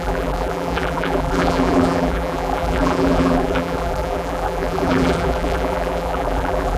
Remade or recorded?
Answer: remade